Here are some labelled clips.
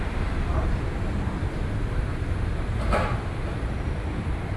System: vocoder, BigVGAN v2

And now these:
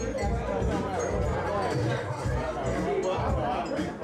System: none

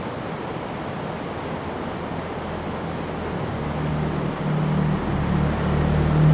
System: none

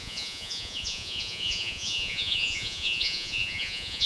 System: vocoder, Vocos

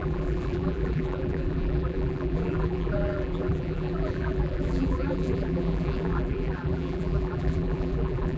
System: vocoder, BigVGAN v2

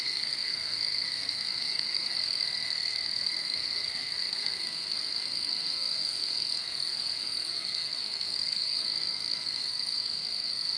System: codec, SNAC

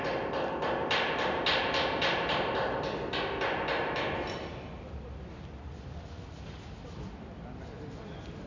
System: none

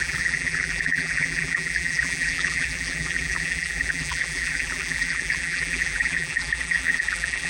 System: vocoder, BigVGAN v2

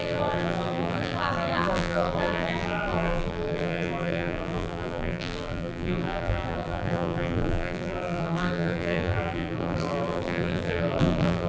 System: vocoder, BigVGAN v2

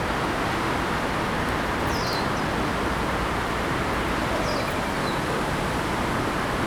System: none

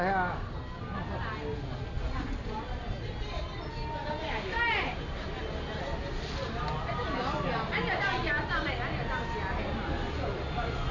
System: none